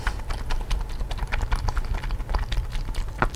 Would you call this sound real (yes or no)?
yes